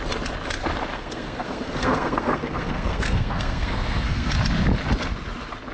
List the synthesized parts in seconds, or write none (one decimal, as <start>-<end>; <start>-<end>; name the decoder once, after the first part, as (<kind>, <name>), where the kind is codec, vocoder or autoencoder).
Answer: 0.9-4.3 (codec, SNAC)

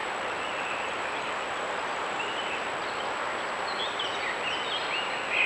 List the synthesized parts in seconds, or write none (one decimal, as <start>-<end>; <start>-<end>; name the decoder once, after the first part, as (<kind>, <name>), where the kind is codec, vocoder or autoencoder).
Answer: 0.0-3.3 (vocoder, BigVGAN v2)